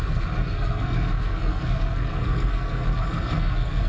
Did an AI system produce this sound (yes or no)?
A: yes